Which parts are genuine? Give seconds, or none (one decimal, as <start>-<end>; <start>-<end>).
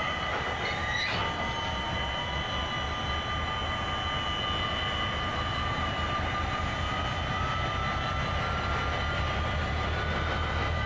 0.0-10.9